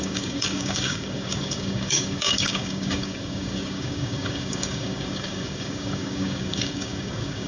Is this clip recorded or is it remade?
remade